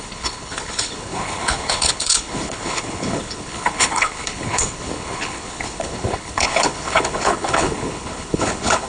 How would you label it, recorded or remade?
remade